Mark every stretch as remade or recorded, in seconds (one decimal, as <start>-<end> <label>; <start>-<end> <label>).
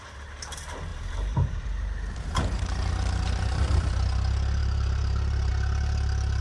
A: 0.0-0.9 recorded; 0.9-3.9 remade; 3.9-4.6 recorded; 4.6-5.5 remade; 5.5-6.4 recorded